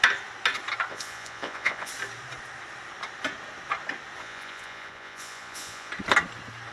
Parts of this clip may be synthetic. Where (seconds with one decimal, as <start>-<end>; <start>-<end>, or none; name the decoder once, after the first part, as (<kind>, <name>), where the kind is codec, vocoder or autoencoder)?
0.9-1.9 (vocoder, Vocos); 4.2-5.9